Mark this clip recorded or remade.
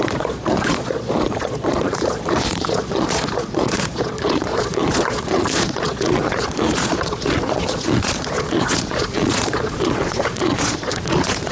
remade